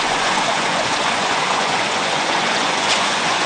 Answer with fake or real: fake